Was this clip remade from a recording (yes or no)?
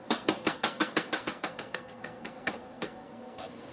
yes